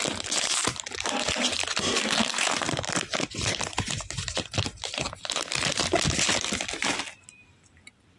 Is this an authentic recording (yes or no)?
no